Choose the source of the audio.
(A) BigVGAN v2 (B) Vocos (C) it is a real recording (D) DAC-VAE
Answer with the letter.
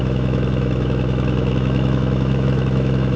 D